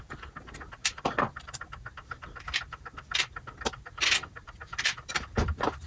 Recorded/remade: recorded